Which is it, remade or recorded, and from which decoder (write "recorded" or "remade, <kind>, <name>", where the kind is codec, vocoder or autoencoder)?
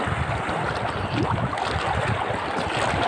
recorded